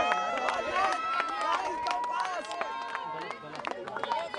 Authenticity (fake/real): real